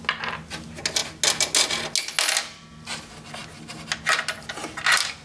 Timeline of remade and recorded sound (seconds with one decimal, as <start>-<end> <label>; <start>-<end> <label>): 0.0-5.2 recorded